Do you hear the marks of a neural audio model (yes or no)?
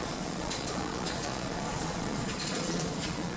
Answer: yes